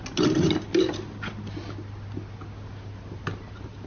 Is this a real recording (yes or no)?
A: yes